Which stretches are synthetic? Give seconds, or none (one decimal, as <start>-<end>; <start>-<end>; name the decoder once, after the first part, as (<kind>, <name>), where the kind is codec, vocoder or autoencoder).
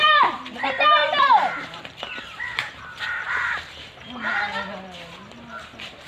1.0-4.4 (vocoder, BigVGAN v2)